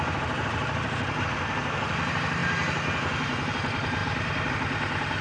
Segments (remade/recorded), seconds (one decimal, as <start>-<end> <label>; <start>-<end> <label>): 0.0-5.2 remade